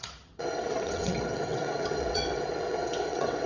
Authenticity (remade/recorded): remade